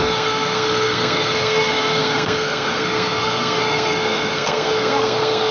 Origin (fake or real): fake